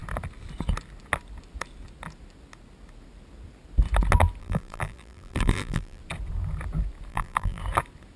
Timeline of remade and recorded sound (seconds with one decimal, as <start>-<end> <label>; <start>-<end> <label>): 0.0-4.4 recorded; 4.4-6.0 remade; 6.0-7.1 recorded; 7.1-7.6 remade; 7.6-8.2 recorded